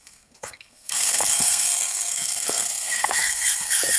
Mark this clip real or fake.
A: fake